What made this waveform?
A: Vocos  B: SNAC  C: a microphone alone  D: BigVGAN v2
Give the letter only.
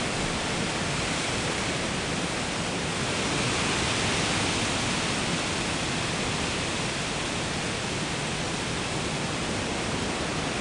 C